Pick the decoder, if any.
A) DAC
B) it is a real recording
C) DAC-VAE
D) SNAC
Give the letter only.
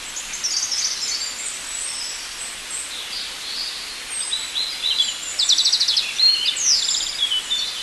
B